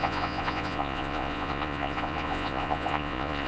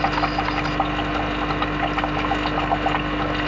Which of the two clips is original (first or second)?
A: second